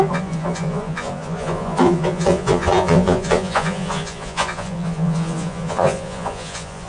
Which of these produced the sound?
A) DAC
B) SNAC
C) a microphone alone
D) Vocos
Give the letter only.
D